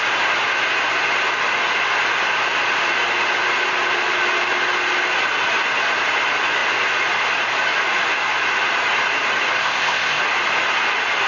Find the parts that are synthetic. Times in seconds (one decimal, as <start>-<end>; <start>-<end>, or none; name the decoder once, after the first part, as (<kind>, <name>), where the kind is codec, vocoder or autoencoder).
9.6-10.2 (codec, ZipCodec)

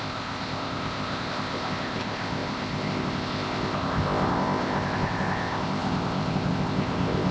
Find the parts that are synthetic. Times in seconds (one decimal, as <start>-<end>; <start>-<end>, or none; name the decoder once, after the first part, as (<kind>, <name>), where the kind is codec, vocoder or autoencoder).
0.0-7.3 (codec, ZipCodec)

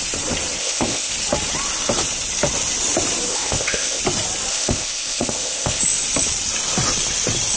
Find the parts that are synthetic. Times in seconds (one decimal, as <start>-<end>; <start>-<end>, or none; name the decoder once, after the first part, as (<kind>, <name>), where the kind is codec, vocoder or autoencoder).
0.6-1.1 (codec, ZipCodec); 3.3-4.0; 4.5-5.8

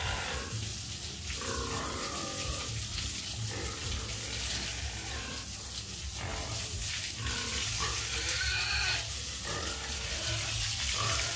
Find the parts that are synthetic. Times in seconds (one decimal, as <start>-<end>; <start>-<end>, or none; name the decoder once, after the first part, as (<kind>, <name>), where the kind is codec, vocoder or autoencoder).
none

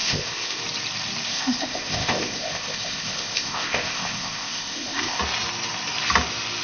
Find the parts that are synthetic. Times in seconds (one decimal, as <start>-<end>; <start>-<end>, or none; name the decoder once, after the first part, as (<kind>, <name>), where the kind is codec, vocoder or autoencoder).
0.0-0.6 (codec, ZipCodec); 1.3-5.2

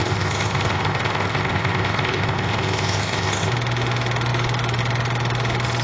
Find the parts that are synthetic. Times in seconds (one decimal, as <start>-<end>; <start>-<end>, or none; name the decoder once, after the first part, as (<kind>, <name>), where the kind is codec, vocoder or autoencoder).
0.0-3.5 (codec, ZipCodec)

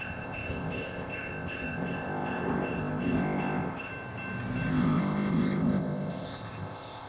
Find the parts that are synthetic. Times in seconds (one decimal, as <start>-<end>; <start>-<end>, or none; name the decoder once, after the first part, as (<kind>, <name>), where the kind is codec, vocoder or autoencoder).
0.0-3.9 (codec, ZipCodec); 4.7-7.1